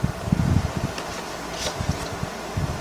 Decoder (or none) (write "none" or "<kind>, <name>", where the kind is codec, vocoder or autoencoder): none